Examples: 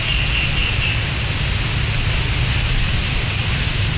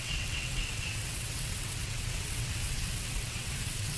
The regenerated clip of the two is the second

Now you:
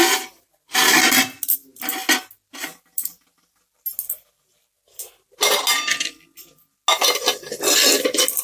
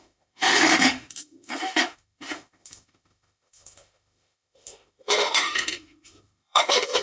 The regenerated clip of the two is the second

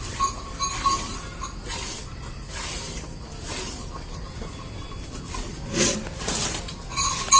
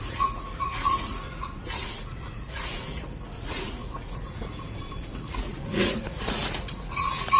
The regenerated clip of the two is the second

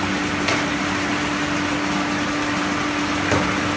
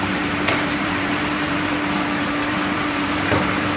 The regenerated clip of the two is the second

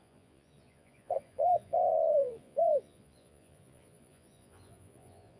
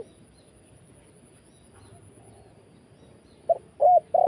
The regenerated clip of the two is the first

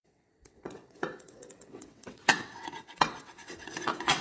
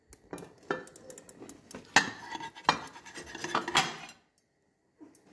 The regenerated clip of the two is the first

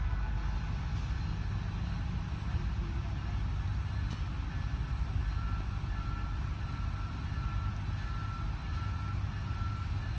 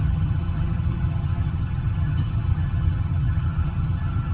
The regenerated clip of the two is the second